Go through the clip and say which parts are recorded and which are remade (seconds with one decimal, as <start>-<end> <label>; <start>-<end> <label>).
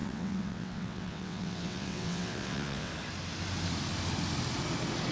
0.0-2.9 remade; 2.9-5.1 recorded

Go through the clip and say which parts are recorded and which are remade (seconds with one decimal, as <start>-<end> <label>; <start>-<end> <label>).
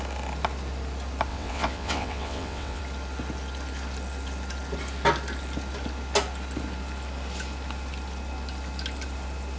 0.0-1.3 recorded; 1.3-2.8 remade; 2.8-9.6 recorded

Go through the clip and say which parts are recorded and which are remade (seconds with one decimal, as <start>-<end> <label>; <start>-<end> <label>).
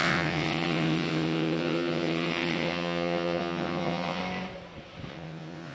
0.0-4.2 remade; 4.2-5.1 recorded; 5.1-5.7 remade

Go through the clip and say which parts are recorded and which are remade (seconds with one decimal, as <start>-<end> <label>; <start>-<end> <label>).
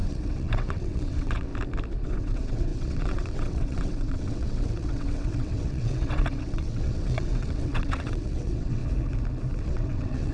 0.0-1.5 remade; 1.5-2.0 recorded; 2.0-8.8 remade; 8.8-9.6 recorded; 9.6-10.3 remade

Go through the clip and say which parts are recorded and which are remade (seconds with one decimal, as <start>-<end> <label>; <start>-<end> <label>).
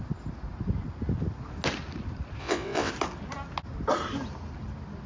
0.0-2.4 recorded; 2.4-2.9 remade; 2.9-5.1 recorded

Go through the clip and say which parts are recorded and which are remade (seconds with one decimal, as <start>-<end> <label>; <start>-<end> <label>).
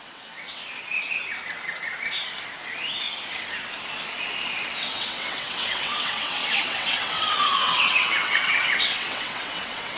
0.0-0.6 remade; 0.6-4.7 recorded; 4.7-10.0 remade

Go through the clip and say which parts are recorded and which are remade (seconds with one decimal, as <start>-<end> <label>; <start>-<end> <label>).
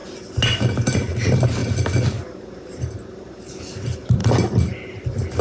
0.0-5.4 recorded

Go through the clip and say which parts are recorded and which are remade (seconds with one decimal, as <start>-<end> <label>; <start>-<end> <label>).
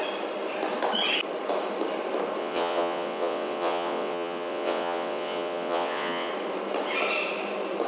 0.0-2.4 recorded; 2.4-6.3 remade; 6.3-7.9 recorded